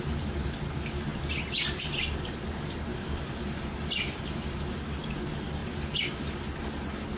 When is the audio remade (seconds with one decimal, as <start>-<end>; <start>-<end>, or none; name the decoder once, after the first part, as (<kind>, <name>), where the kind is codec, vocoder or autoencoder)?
2.9-4.8 (vocoder, BigVGAN v2); 5.6-6.3